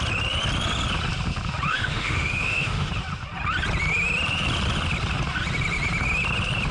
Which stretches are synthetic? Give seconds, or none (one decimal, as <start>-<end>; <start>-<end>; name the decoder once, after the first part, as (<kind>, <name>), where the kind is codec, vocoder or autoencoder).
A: 1.7-2.9 (autoencoder, DAC-VAE)